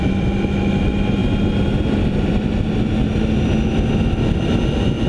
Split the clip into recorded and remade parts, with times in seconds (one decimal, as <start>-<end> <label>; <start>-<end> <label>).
0.0-5.1 recorded